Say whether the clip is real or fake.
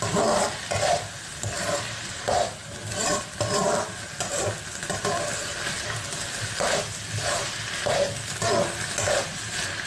real